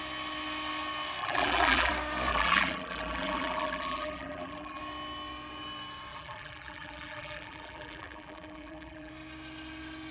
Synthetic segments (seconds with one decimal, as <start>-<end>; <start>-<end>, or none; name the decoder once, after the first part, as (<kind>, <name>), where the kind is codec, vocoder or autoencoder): 1.2-1.9 (vocoder, BigVGAN v2); 2.3-4.8; 6.1-9.1